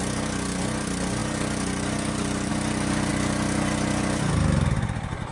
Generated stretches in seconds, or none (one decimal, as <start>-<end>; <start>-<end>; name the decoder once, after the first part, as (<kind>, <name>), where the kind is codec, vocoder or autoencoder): none